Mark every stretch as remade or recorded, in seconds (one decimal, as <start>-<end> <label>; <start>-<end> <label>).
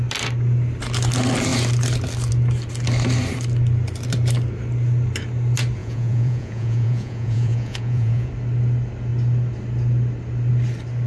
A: 0.0-5.8 recorded; 5.8-8.3 remade; 8.3-11.1 recorded